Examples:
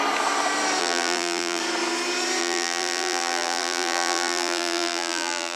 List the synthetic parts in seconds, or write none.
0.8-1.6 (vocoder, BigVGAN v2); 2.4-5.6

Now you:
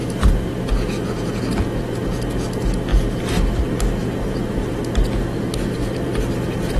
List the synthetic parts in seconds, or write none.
0.0-1.3 (vocoder, BigVGAN v2); 2.9-3.4; 4.0-4.8; 5.8-6.8

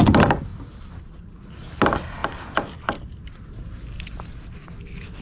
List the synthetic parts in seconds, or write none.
0.5-1.2 (vocoder, BigVGAN v2)

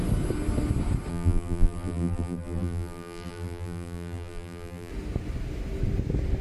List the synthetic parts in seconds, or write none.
1.1-4.9 (vocoder, BigVGAN v2)

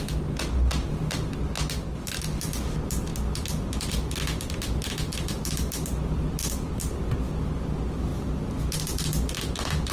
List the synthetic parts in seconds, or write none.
8.1-8.6 (vocoder, BigVGAN v2)

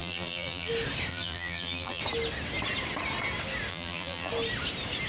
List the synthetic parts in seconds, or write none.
0.0-0.7 (vocoder, BigVGAN v2); 1.1-2.0; 3.7-4.3